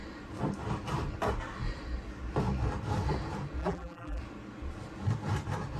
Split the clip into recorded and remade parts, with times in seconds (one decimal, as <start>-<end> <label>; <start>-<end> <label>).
0.0-3.6 recorded; 3.6-4.2 remade; 4.2-5.8 recorded